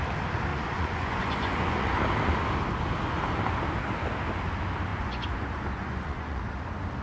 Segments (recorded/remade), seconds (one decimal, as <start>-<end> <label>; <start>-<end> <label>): 0.0-0.5 recorded; 0.5-1.9 remade; 1.9-4.9 recorded; 4.9-6.5 remade; 6.5-7.0 recorded